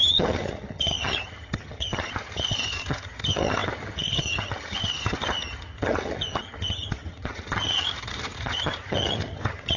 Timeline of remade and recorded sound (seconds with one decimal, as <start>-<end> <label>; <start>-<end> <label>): 0.0-9.8 remade